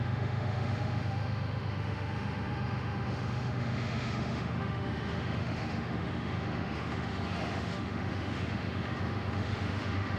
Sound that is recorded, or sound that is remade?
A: remade